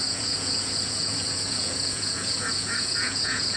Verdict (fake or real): fake